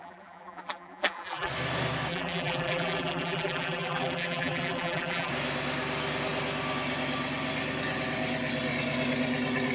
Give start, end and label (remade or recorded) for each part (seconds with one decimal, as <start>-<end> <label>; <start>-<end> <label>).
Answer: 0.0-1.5 remade; 1.5-2.1 recorded; 2.1-5.3 remade; 5.3-9.7 recorded